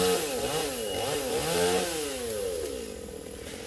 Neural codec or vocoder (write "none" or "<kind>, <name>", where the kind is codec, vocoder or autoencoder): none